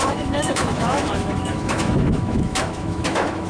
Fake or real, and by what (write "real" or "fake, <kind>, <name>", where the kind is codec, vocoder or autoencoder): fake, autoencoder, DAC-VAE